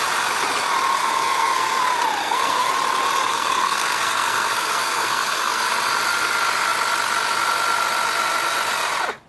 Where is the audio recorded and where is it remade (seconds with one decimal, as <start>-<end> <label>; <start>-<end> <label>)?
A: 0.0-1.0 recorded; 1.0-1.8 remade; 1.8-2.2 recorded; 2.2-2.7 remade; 2.7-3.3 recorded; 3.3-5.7 remade; 5.7-9.3 recorded